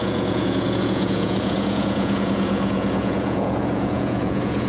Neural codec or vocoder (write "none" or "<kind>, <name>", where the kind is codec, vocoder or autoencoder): vocoder, Vocos